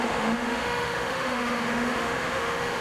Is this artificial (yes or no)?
yes